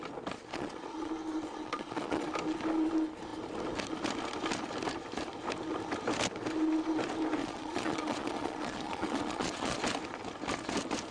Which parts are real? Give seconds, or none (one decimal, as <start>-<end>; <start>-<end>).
0.0-0.5; 1.1-1.5; 2.3-7.4; 9.8-11.1